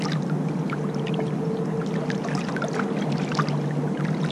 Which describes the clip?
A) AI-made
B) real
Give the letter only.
B